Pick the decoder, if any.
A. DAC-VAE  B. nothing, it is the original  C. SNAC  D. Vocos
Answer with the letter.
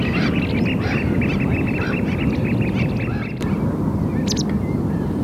B